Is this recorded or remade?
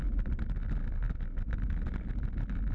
recorded